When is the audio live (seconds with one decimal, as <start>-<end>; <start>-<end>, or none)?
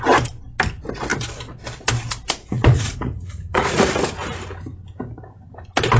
0.0-2.5; 3.9-6.0